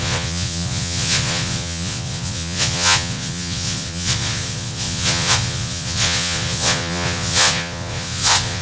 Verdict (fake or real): fake